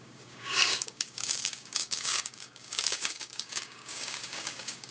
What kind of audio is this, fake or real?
fake